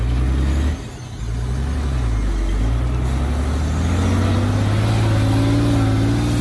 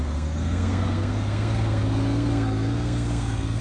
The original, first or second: first